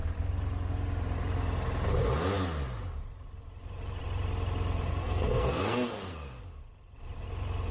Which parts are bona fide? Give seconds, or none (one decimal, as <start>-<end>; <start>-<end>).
0.0-4.9; 6.4-7.7